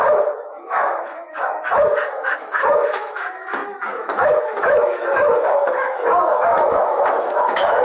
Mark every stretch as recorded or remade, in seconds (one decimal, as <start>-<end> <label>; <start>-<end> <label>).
0.0-7.8 remade

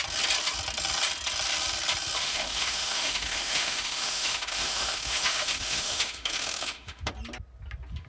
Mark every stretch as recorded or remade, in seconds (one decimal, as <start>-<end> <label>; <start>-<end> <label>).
0.0-2.2 recorded; 2.2-7.1 remade; 7.1-8.1 recorded

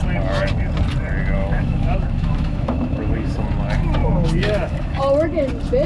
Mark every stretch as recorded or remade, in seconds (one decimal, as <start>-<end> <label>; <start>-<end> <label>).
0.0-1.4 recorded; 1.4-3.3 remade; 3.3-4.0 recorded; 4.0-5.0 remade; 5.0-5.9 recorded

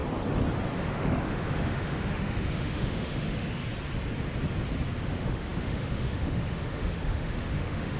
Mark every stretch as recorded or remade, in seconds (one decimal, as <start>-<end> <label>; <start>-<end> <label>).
0.0-0.8 recorded; 0.8-3.6 remade; 3.6-5.0 recorded; 5.0-8.0 remade